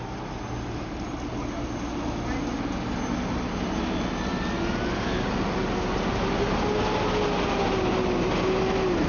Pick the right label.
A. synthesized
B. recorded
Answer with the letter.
B